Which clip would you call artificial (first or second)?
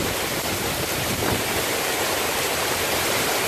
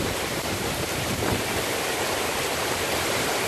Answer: second